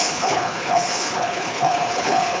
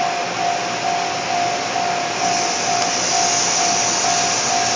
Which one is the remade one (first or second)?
first